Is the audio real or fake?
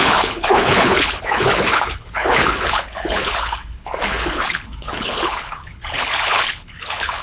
fake